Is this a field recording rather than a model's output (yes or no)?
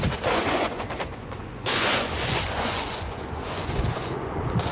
no